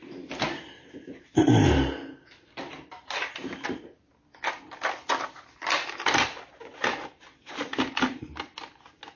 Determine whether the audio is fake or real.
real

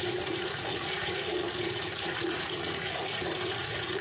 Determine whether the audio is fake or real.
fake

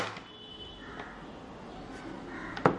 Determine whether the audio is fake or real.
real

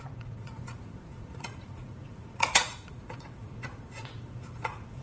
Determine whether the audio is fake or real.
fake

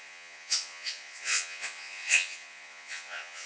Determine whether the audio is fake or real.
fake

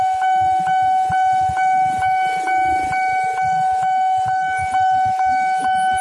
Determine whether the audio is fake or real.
real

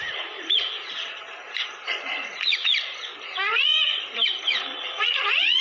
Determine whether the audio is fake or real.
fake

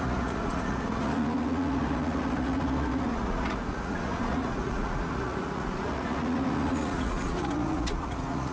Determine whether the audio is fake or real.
fake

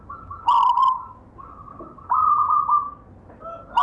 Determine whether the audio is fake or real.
real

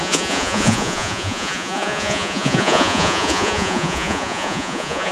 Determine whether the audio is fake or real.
fake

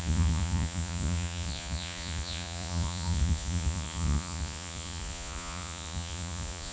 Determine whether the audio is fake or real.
fake